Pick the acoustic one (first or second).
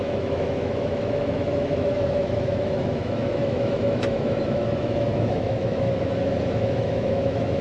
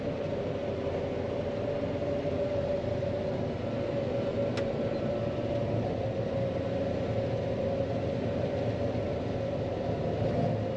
second